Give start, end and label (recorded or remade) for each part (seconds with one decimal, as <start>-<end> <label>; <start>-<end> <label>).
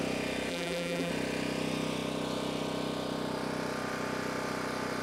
0.0-0.5 recorded; 0.5-1.1 remade; 1.1-5.0 recorded